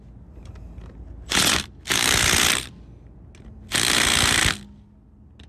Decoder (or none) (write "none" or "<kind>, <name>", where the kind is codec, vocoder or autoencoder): none